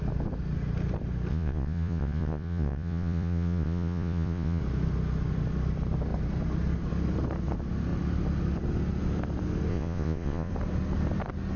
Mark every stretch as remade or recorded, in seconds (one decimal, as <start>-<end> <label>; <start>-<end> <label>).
0.0-1.3 recorded; 1.3-4.6 remade; 4.6-9.7 recorded; 9.7-10.5 remade; 10.5-11.6 recorded